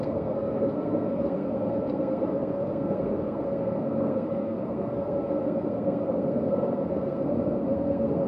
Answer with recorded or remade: remade